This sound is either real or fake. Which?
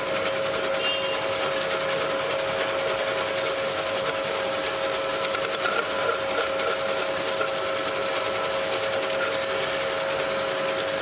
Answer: real